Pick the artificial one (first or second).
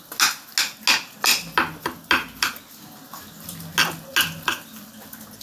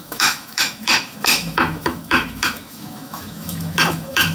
second